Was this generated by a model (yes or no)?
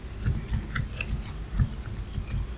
no